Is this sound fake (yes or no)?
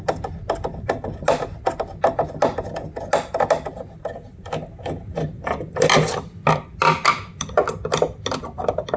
no